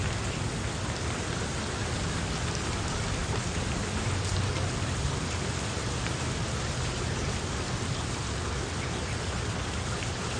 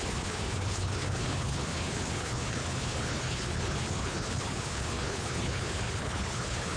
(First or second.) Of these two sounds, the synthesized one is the second